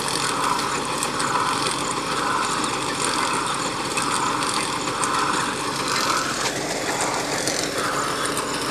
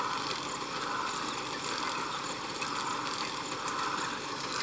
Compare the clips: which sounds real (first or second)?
first